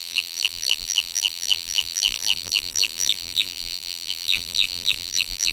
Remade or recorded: remade